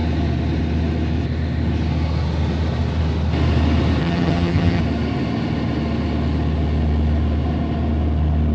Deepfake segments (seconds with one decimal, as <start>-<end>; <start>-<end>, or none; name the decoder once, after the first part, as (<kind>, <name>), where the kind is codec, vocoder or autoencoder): 4.0-4.8 (vocoder, HiFi-GAN)